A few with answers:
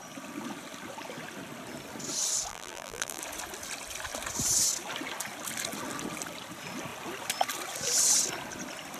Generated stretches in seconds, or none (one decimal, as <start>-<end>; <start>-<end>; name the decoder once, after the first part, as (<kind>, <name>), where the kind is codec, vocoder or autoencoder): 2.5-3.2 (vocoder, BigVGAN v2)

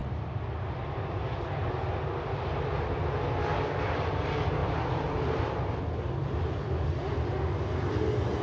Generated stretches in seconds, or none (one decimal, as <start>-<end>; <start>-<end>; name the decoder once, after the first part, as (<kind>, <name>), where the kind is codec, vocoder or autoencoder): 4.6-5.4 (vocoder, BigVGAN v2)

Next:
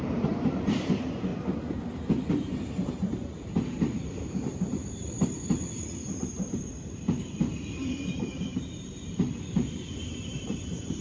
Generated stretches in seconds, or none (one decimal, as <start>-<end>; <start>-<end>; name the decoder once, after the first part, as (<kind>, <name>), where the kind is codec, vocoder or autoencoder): 0.0-1.3 (vocoder, BigVGAN v2); 2.3-11.0

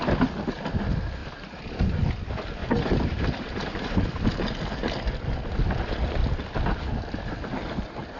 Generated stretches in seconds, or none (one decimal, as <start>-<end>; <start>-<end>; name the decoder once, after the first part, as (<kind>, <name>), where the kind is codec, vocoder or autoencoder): 1.2-2.0 (vocoder, BigVGAN v2); 2.6-4.0

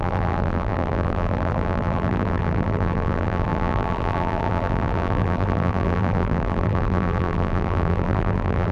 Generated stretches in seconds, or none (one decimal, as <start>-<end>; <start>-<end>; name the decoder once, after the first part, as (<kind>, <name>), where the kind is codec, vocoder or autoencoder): 0.0-8.7 (vocoder, BigVGAN v2)

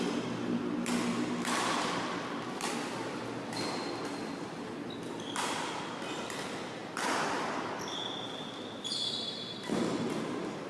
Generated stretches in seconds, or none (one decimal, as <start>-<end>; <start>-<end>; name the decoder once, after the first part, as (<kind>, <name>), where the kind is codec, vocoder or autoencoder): 1.1-5.8 (vocoder, BigVGAN v2)

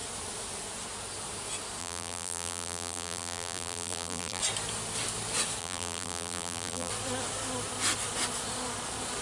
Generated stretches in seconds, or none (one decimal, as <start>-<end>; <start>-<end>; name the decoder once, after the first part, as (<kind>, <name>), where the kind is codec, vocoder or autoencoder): 1.8-4.4 (vocoder, BigVGAN v2); 5.6-6.9